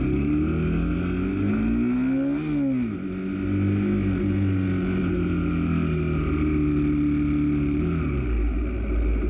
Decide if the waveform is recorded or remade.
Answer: recorded